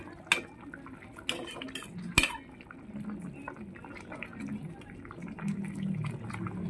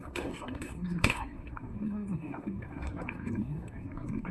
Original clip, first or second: first